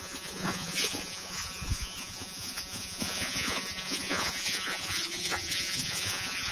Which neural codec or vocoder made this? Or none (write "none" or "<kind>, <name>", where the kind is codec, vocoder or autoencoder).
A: vocoder, Vocos